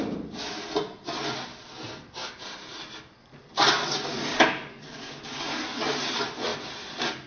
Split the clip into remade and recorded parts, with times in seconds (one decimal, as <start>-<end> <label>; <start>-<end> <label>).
0.0-4.3 recorded; 4.3-5.8 remade; 5.8-7.3 recorded